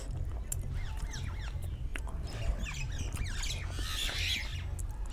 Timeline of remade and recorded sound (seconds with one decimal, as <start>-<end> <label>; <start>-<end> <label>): 0.0-5.1 recorded